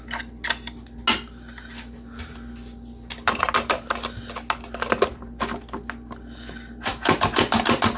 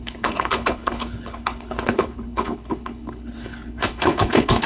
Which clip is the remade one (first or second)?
second